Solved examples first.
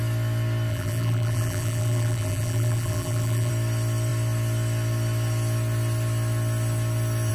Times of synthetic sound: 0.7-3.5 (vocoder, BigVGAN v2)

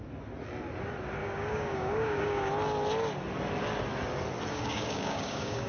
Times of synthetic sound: 1.2-2.5 (codec, DAC); 4.5-5.7

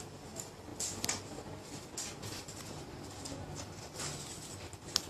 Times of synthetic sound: none

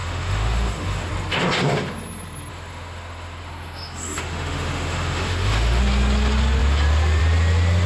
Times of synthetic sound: 0.0-1.1 (autoencoder, DAC-VAE); 2.5-5.8